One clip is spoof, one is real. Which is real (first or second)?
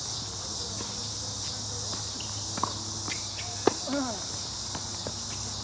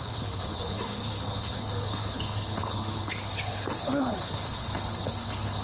first